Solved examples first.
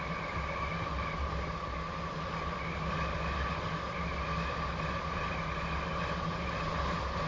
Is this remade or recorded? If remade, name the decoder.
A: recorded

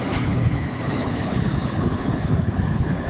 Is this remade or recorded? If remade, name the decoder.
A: remade, codec, HILCodec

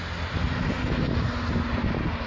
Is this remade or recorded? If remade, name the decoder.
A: recorded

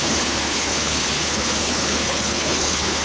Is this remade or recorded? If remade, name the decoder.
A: remade, codec, HILCodec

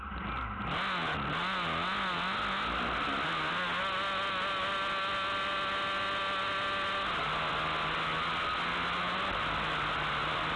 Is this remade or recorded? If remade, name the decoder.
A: recorded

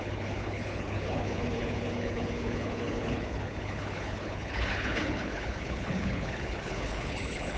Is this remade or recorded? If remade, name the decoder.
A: remade, codec, HILCodec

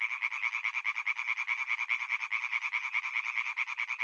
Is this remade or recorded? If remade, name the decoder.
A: recorded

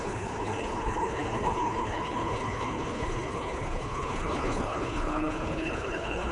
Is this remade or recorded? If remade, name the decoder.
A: remade, codec, HILCodec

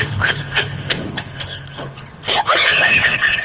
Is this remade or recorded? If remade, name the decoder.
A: remade, codec, HILCodec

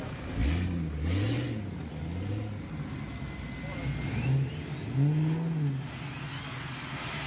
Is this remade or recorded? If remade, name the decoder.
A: recorded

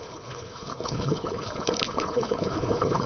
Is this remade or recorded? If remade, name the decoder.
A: remade, codec, HILCodec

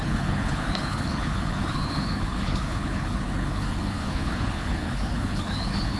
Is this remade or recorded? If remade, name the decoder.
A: remade, codec, HILCodec